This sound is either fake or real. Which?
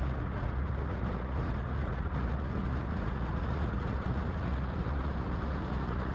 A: fake